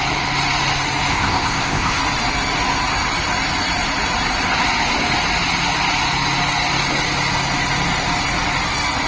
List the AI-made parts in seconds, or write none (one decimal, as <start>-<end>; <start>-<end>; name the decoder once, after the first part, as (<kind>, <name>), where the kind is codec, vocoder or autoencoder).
1.1-2.0 (codec, ZipCodec)